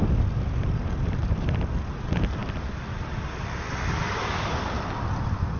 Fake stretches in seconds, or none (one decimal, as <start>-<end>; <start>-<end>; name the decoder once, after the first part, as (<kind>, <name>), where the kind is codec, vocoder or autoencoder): 1.2-1.8 (vocoder, BigVGAN v2)